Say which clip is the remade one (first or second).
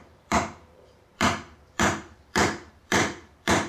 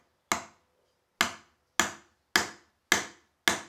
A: first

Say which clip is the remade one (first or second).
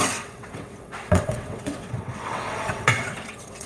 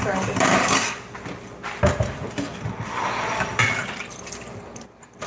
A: first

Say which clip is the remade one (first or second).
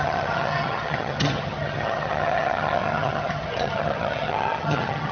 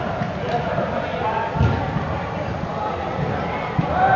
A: first